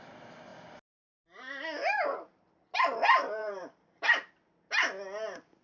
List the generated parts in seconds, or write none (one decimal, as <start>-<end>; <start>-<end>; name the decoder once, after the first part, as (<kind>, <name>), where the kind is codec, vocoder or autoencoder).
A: 3.4-4.3 (vocoder, BigVGAN v2)